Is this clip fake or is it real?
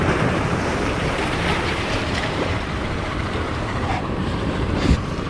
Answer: fake